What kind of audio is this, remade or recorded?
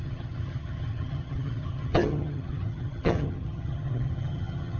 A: remade